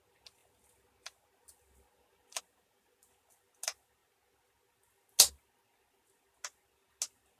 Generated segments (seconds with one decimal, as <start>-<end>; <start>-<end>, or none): none